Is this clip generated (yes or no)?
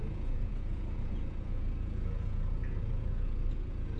yes